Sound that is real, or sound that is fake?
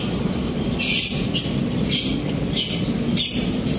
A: real